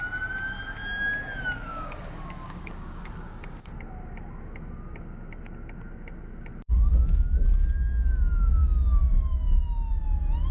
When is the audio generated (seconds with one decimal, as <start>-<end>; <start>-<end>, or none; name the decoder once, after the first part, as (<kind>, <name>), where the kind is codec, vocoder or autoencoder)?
1.7-3.7 (codec, DAC)